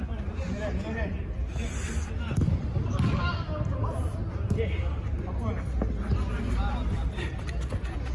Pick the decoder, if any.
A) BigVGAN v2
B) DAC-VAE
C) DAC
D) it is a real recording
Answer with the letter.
D